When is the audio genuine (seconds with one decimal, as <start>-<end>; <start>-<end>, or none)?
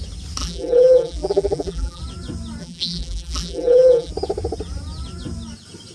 0.0-0.4; 2.0-2.6; 4.1-5.9